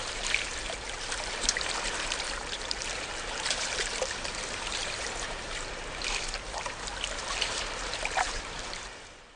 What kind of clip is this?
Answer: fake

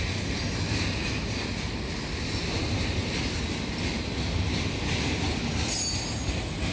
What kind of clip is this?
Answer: real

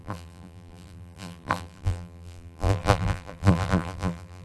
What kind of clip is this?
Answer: fake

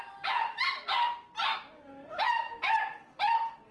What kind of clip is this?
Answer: real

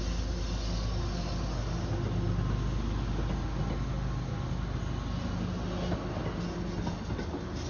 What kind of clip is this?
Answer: real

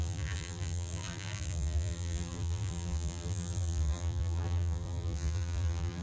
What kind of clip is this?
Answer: fake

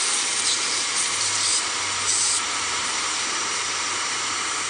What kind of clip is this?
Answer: fake